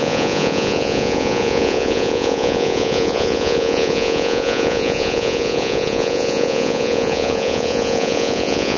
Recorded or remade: remade